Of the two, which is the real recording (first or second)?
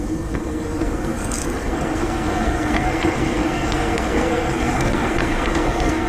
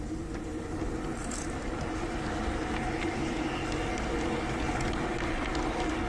second